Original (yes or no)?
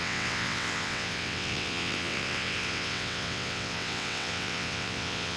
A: no